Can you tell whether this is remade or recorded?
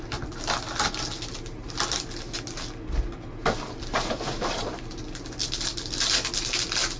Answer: recorded